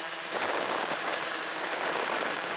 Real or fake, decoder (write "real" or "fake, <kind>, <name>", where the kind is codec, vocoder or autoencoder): fake, codec, DAC